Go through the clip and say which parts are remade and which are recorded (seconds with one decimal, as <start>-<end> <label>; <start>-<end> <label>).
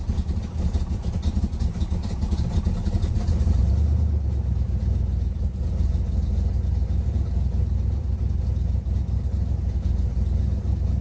0.0-11.0 recorded